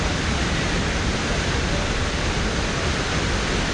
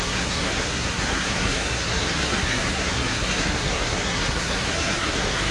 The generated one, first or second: second